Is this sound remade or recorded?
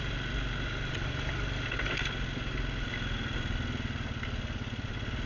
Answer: recorded